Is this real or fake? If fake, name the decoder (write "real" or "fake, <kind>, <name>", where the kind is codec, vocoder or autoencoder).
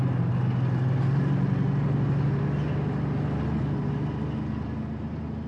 real